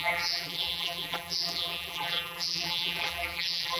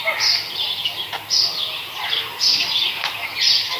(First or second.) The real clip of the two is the second